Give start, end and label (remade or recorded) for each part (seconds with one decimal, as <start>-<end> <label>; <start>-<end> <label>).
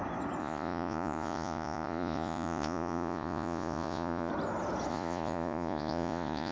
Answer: 0.0-0.4 recorded; 0.4-4.3 remade; 4.3-4.9 recorded; 4.9-6.5 remade